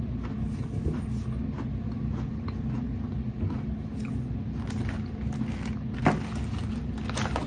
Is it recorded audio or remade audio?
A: recorded